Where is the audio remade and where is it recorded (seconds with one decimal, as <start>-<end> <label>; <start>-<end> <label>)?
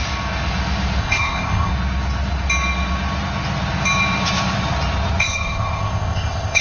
0.0-1.0 recorded; 1.0-1.7 remade; 1.7-5.2 recorded; 5.2-6.6 remade